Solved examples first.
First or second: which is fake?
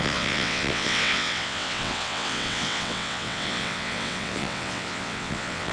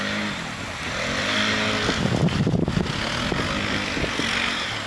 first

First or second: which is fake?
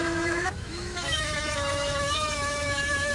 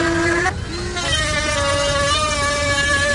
first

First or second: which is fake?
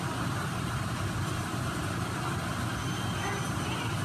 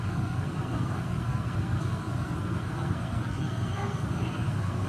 second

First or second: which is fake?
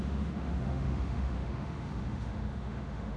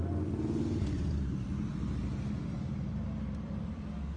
first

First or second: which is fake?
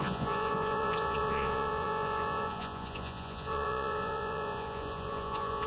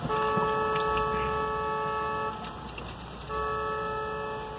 first